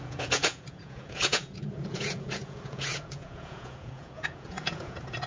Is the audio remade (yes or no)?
yes